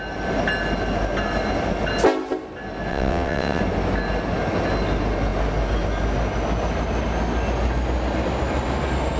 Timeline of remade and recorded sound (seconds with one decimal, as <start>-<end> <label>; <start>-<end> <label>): 0.0-2.9 recorded; 2.9-3.6 remade; 3.6-9.2 recorded